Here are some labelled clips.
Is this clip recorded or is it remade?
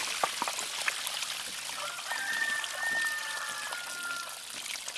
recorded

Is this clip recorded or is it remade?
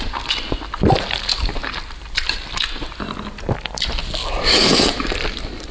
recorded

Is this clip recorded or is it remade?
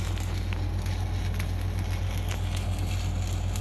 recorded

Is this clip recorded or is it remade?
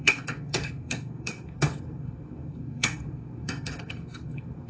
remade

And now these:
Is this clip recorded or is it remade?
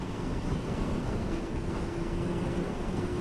remade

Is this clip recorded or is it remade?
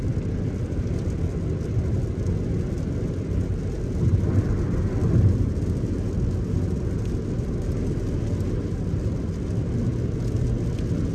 recorded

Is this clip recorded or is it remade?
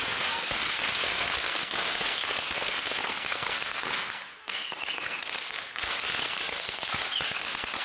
remade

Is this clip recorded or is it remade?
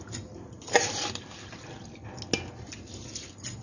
recorded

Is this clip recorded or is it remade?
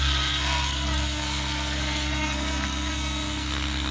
remade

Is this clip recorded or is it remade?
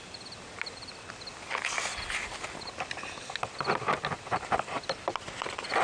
recorded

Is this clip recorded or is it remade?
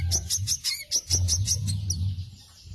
recorded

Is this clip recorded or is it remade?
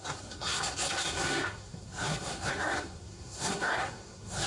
remade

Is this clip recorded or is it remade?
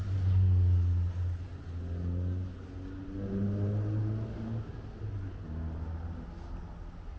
recorded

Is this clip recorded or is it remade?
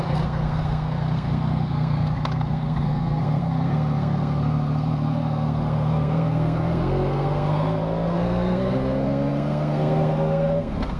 remade